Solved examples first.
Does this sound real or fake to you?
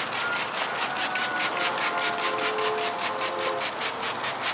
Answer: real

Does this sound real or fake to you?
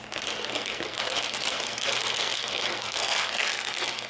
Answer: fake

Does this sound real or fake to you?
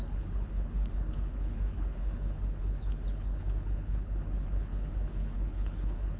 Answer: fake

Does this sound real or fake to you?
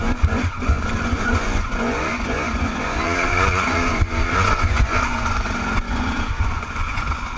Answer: fake